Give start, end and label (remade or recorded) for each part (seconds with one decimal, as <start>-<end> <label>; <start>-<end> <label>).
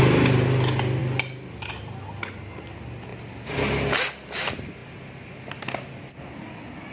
0.0-6.9 recorded